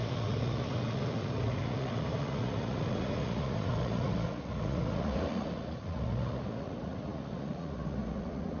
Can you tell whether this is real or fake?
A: fake